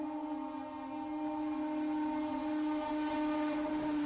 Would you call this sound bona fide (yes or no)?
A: yes